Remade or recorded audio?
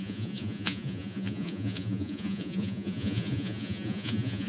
remade